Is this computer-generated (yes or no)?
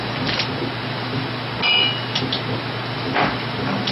no